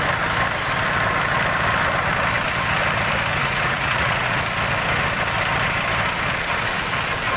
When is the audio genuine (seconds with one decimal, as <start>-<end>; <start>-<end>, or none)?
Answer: 0.0-3.4; 4.4-7.4